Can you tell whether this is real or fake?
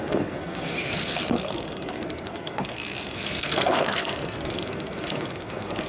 fake